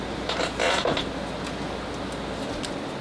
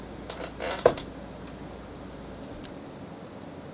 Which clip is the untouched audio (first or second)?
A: first